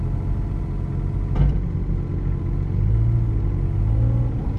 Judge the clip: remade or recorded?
recorded